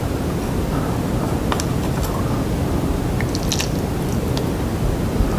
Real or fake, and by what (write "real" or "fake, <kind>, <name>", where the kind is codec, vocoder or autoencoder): real